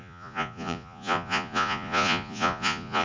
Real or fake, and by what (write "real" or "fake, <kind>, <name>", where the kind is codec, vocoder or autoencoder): fake, vocoder, Vocos